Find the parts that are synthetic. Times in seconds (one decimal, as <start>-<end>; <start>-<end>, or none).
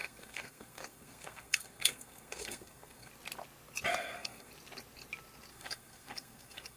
0.0-3.1; 3.9-4.5; 5.5-6.8